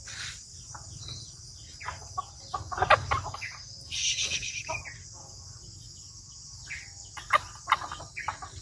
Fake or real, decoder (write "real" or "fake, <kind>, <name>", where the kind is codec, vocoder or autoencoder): real